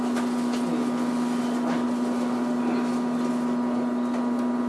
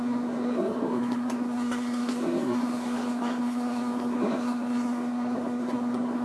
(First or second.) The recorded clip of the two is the first